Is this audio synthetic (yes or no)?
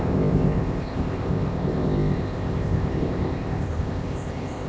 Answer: yes